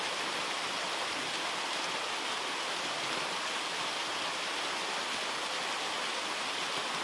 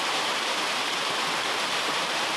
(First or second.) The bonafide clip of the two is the first